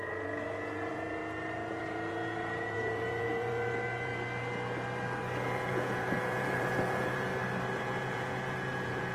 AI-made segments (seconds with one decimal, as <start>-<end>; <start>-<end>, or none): 0.0-1.2; 1.7-4.1; 5.4-7.3; 7.8-9.1